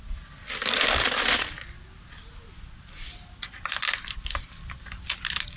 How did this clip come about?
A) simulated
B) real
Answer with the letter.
B